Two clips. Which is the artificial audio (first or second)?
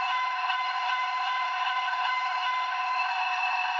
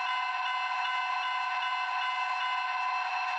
first